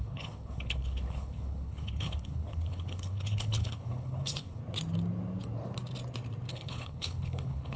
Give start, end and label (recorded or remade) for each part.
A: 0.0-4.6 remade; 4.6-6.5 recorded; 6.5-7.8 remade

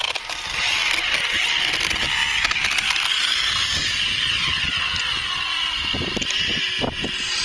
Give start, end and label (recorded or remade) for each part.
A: 0.0-0.8 remade; 0.8-1.6 recorded; 1.6-2.2 remade; 2.2-5.0 recorded; 5.0-7.4 remade